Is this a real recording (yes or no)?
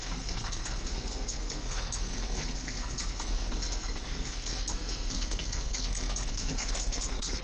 no